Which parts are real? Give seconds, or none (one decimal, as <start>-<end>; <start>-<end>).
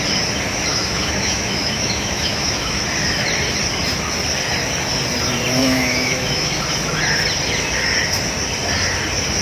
0.0-0.7; 2.8-5.6; 6.6-9.4